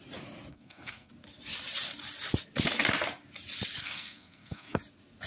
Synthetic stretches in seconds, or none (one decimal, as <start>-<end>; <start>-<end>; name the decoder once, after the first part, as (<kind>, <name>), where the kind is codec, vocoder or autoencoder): 0.5-1.1 (codec, SNAC); 3.8-4.8